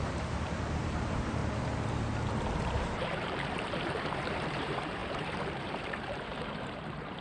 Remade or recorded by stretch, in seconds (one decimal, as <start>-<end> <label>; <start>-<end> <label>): 0.0-1.4 remade; 1.4-2.6 recorded; 2.6-7.2 remade